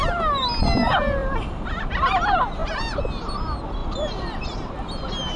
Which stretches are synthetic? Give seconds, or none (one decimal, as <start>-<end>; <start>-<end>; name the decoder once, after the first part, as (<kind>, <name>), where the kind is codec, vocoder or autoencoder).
1.2-1.9 (vocoder, BigVGAN v2); 3.8-4.5